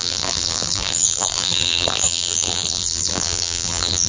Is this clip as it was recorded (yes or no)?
no